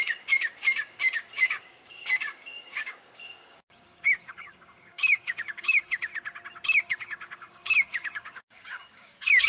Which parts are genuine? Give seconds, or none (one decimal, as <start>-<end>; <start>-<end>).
6.1-6.9